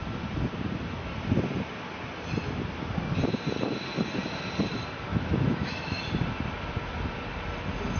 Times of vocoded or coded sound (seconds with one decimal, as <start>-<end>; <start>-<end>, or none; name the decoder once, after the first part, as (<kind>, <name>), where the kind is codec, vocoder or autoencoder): 5.1-5.9 (autoencoder, DAC-VAE)